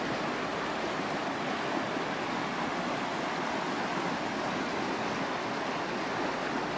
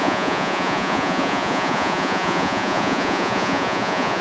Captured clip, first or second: first